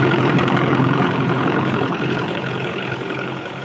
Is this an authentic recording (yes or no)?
no